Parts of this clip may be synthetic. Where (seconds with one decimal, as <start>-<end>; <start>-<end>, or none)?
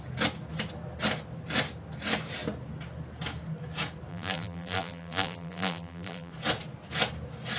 4.1-6.3